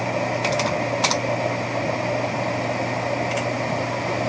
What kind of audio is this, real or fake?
real